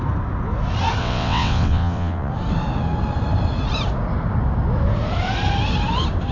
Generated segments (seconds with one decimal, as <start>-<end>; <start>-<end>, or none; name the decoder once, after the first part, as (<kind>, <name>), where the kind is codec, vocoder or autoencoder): 1.0-2.3 (vocoder, WaveNeXt)

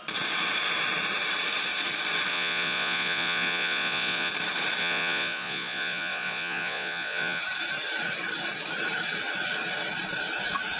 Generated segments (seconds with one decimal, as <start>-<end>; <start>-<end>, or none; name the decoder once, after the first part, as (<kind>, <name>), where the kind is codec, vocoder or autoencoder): 2.3-4.3 (vocoder, Vocos); 4.8-7.4

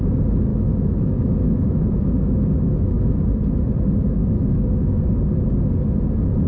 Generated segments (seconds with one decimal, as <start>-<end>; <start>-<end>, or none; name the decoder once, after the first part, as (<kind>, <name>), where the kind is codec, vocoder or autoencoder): 0.5-3.1 (autoencoder, DAC-VAE); 4.2-5.0

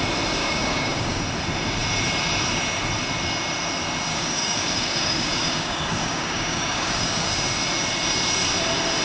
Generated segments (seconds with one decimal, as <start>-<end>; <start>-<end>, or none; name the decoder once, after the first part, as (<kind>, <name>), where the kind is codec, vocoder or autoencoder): 0.4-1.2 (codec, DAC); 4.1-7.3